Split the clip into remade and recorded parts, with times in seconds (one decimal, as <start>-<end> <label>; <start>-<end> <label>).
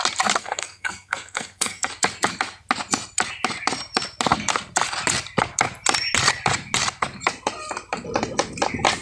0.0-0.4 recorded; 0.4-1.9 remade; 1.9-9.0 recorded